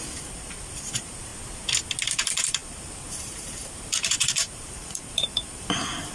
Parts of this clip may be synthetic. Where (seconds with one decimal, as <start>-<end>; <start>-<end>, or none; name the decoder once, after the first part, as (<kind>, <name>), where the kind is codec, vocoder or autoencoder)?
0.0-1.3 (vocoder, BigVGAN v2); 2.0-6.1